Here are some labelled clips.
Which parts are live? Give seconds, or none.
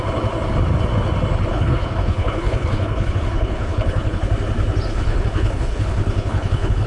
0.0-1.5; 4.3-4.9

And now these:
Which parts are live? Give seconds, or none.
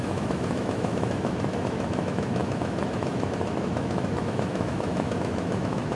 none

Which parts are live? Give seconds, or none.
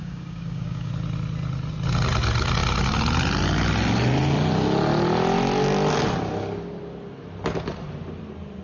0.9-8.6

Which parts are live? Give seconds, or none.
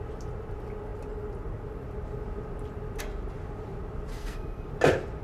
0.0-4.1; 4.7-5.2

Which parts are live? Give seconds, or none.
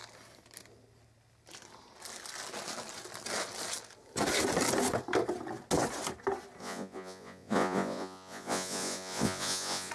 0.0-6.6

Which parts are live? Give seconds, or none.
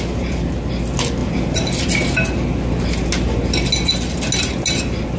0.0-5.2